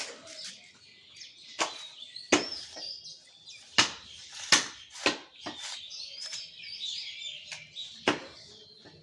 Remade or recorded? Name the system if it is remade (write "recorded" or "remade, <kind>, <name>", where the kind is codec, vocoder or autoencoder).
recorded